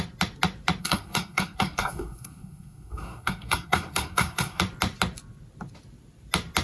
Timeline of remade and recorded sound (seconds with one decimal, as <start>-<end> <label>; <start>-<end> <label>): 0.0-0.8 recorded; 0.8-4.6 remade; 4.6-6.6 recorded